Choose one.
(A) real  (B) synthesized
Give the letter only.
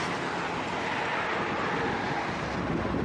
A